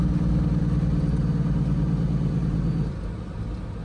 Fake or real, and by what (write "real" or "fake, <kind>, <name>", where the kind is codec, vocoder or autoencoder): real